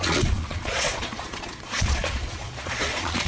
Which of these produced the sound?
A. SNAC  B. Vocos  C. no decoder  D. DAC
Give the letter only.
B